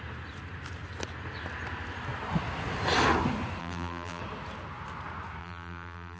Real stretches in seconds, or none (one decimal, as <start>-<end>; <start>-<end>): 0.0-3.6; 4.2-5.4

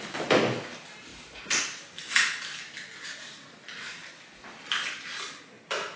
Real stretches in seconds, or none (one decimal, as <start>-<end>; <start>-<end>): 0.0-6.0

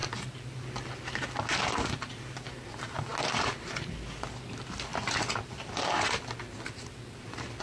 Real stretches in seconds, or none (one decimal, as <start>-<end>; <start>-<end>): 0.0-2.5; 3.1-4.3; 4.9-6.9

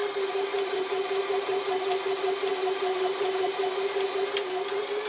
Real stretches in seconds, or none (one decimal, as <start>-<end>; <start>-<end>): 2.1-2.5; 3.7-5.1

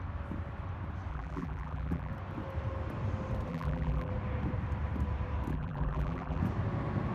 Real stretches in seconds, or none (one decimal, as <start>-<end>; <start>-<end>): 0.0-1.1; 2.1-3.5; 4.1-5.5; 6.4-7.1